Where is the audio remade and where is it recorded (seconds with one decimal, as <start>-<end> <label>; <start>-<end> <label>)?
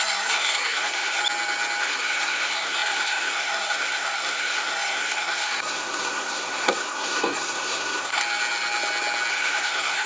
0.0-1.2 remade; 1.2-1.8 recorded; 1.8-8.2 remade; 8.2-9.3 recorded; 9.3-10.1 remade